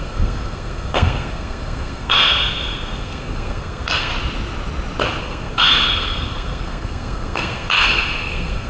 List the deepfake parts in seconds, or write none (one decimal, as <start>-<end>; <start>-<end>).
0.0-4.1; 5.2-8.7

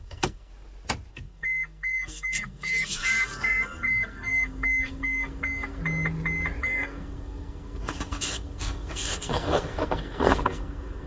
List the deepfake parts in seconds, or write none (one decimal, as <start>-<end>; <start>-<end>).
0.0-0.5; 1.1-5.8; 6.6-11.1

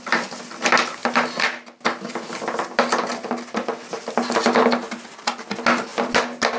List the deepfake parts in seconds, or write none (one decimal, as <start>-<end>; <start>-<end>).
none

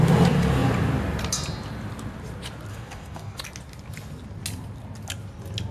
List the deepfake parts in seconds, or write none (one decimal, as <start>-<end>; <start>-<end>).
2.7-3.4

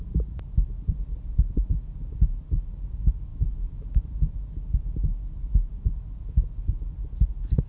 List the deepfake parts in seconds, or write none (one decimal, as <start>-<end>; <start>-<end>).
none

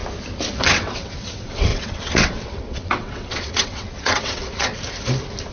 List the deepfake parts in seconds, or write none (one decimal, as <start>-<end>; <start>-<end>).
0.6-4.7

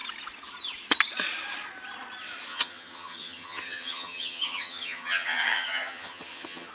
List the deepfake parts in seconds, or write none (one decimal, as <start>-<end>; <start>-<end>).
2.5-6.7